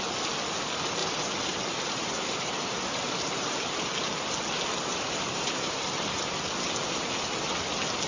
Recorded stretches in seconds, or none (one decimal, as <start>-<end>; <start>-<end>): 0.0-1.0; 3.6-4.9; 6.5-8.1